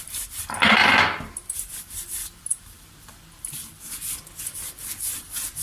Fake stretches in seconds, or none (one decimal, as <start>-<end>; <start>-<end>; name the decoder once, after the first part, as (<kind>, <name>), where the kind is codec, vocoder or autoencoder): 0.0-0.8 (vocoder, BigVGAN v2); 1.7-5.6